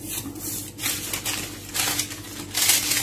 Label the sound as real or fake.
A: real